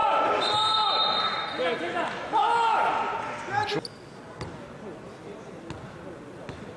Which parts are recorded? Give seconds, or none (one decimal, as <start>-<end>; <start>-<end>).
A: 0.0-6.8